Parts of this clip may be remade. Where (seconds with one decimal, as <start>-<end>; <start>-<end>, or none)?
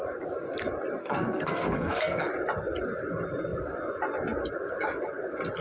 1.0-2.3